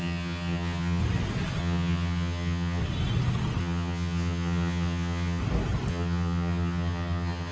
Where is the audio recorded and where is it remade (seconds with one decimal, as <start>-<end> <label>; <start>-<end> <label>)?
0.0-1.0 remade; 1.0-1.6 recorded; 1.6-2.8 remade; 2.8-3.6 recorded; 3.6-5.4 remade; 5.4-5.9 recorded; 5.9-7.5 remade